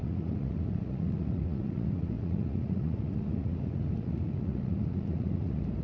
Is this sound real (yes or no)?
no